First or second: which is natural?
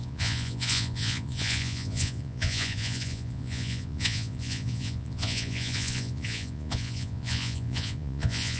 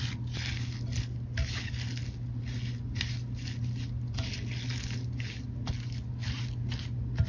second